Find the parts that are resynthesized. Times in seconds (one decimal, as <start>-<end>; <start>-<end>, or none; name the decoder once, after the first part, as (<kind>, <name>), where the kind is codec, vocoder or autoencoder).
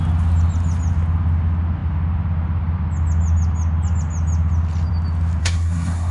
5.4-6.1 (codec, SNAC)